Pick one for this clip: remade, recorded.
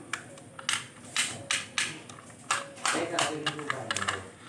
recorded